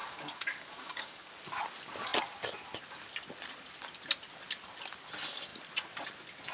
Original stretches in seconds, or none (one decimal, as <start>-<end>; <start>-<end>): 1.3-6.5